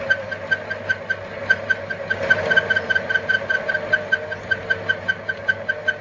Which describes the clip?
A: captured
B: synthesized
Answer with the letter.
A